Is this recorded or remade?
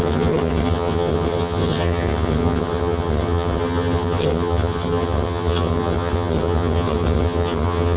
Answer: remade